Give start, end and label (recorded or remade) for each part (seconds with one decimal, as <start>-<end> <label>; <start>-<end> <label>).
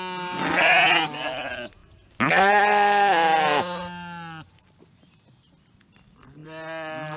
0.0-7.2 recorded